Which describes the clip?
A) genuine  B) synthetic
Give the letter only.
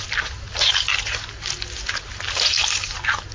A